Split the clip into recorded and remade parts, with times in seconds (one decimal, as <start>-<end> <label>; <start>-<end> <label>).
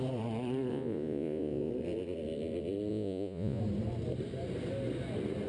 0.0-0.7 recorded; 0.7-1.7 remade; 1.7-2.9 recorded; 2.9-3.6 remade; 3.6-5.5 recorded